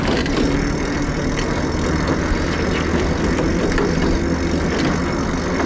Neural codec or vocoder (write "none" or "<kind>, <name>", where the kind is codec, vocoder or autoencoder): none